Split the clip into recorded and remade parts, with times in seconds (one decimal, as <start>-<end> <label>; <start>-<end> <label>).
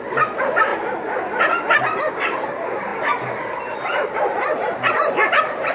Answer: 0.0-0.7 remade; 0.7-2.1 recorded; 2.1-2.9 remade; 2.9-3.6 recorded; 3.6-5.7 remade